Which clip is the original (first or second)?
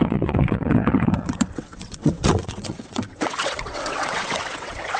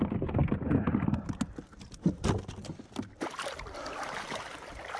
second